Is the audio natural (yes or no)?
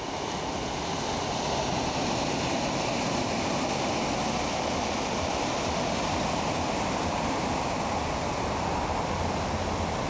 yes